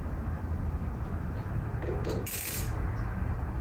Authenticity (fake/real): fake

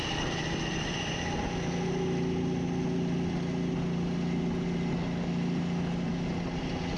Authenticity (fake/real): real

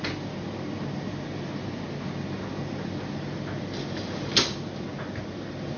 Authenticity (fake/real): real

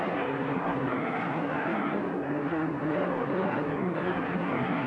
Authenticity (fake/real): fake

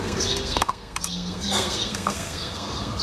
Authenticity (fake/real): fake